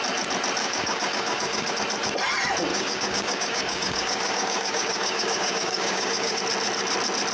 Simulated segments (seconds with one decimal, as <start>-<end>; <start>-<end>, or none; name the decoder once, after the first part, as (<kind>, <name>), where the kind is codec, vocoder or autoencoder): 0.6-1.7 (codec, DAC); 2.7-6.4